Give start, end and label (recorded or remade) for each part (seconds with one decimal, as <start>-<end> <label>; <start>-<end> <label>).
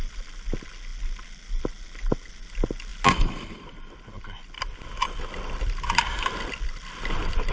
0.0-7.5 recorded